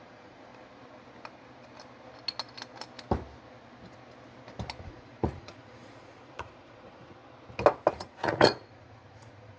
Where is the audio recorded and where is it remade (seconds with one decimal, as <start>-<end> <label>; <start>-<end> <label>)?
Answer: 0.0-0.5 remade; 0.5-4.8 recorded; 4.8-7.2 remade; 7.2-7.9 recorded; 7.9-9.6 remade